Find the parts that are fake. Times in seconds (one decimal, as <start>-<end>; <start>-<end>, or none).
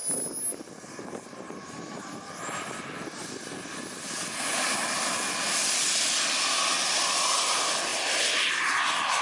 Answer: none